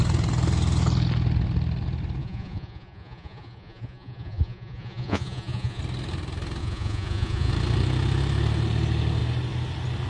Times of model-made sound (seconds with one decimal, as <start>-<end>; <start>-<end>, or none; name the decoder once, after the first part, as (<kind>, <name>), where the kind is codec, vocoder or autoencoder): 2.2-5.8 (vocoder, Vocos); 6.6-7.5